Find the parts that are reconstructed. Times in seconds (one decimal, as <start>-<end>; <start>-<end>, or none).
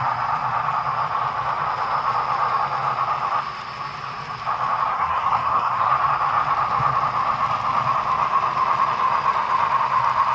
4.9-5.9